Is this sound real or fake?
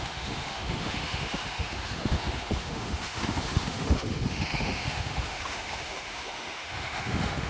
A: fake